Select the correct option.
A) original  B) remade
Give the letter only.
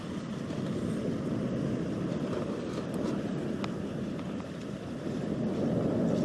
A